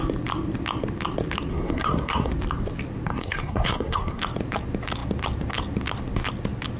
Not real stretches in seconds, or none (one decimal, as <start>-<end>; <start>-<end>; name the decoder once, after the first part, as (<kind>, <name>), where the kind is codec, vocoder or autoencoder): 1.5-2.3 (codec, SNAC); 3.1-4.2